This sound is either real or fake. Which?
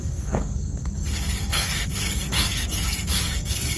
fake